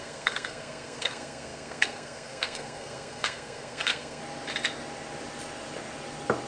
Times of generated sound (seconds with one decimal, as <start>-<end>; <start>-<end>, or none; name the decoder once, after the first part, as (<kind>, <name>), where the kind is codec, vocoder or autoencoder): 0.0-4.2 (codec, SNAC)